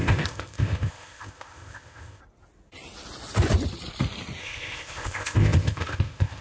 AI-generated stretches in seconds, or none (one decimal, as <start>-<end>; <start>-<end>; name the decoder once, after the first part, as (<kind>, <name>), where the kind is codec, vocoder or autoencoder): 0.0-2.2 (codec, ZipCodec); 4.4-6.4